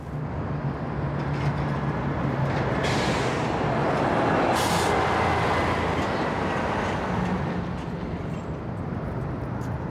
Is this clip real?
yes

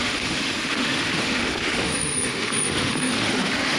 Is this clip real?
no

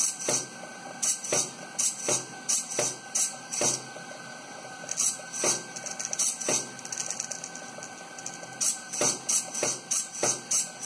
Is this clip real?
yes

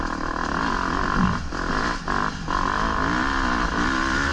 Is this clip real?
yes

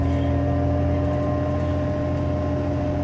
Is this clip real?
yes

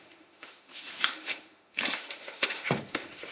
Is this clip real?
no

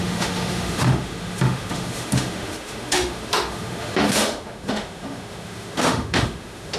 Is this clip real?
no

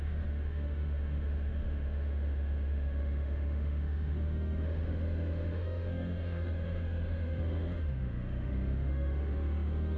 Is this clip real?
no